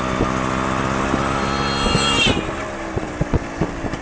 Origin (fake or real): real